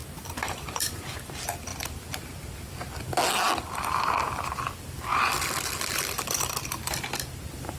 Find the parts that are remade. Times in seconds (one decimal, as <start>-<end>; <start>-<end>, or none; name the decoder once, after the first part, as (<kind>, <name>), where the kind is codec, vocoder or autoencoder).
0.0-1.0 (vocoder, BigVGAN v2)

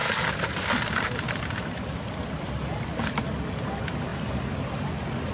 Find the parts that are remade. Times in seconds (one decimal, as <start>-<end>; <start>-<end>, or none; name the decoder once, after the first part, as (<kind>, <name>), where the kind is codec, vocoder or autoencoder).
0.0-3.2 (vocoder, BigVGAN v2)

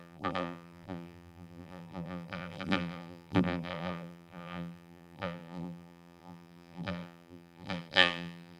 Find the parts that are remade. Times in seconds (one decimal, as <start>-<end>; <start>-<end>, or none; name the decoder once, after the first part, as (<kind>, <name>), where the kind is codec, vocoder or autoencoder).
0.0-8.6 (vocoder, BigVGAN v2)

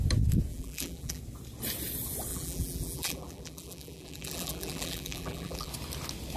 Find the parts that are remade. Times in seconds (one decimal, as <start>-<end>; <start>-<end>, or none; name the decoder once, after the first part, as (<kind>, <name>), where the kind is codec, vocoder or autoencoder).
0.5-1.2 (vocoder, BigVGAN v2); 2.3-5.7